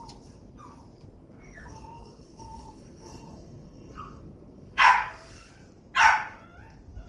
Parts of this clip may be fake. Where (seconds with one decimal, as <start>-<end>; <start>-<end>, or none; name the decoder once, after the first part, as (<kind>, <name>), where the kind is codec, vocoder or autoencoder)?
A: 1.2-5.5 (codec, SNAC)